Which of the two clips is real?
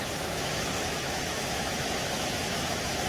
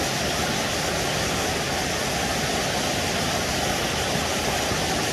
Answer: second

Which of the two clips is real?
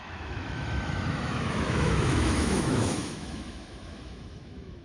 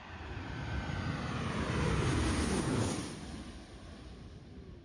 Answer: second